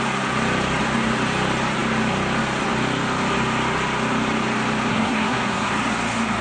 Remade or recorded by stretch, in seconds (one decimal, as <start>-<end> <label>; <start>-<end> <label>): 0.0-4.9 recorded; 4.9-5.7 remade; 5.7-6.4 recorded